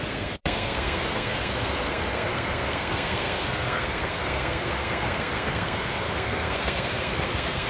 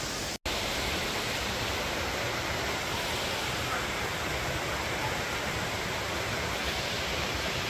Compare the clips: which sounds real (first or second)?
second